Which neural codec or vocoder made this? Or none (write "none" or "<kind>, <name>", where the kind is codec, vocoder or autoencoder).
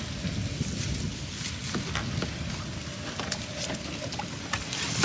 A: none